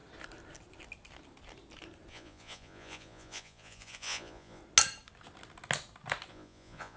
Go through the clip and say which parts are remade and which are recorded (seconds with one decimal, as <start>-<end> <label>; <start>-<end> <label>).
0.0-2.1 recorded; 2.1-4.6 remade; 4.6-6.3 recorded; 6.3-7.0 remade